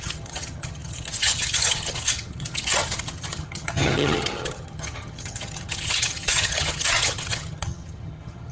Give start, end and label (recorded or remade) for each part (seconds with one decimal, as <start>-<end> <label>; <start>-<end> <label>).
0.0-8.5 remade